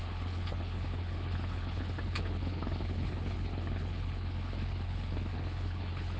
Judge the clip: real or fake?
fake